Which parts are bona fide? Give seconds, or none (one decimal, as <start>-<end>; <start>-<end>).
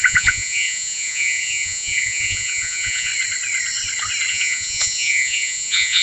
3.1-4.3